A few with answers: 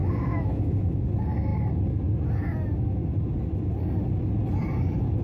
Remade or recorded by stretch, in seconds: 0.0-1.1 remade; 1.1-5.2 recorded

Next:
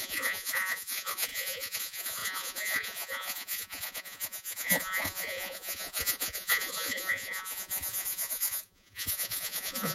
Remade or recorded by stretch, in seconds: 0.0-9.9 remade

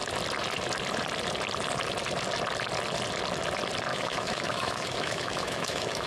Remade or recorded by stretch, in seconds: 0.0-3.9 recorded; 3.9-6.1 remade

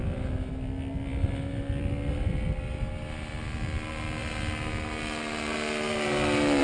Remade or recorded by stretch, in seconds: 0.0-6.6 recorded

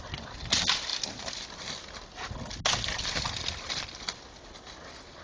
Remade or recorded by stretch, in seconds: 0.0-5.2 recorded

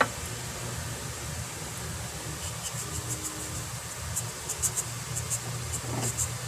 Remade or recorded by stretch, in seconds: 0.0-0.6 remade; 0.6-4.2 recorded; 4.2-6.5 remade

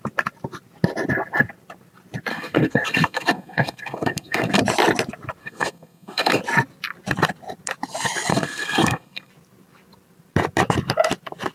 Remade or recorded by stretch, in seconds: 0.0-2.3 recorded; 2.3-4.6 remade; 4.6-5.4 recorded; 5.4-6.4 remade; 6.4-8.3 recorded; 8.3-9.3 remade; 9.3-11.5 recorded

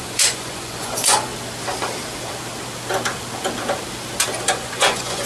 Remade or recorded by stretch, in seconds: 0.0-1.3 remade; 1.3-4.5 recorded; 4.5-5.3 remade